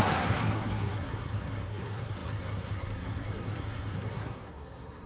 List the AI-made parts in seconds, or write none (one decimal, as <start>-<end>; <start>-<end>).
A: 0.0-5.1